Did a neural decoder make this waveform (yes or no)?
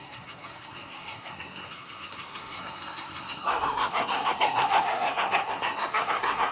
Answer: yes